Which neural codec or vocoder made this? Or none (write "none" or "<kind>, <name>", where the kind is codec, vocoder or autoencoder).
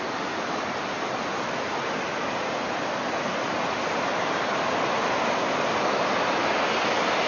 none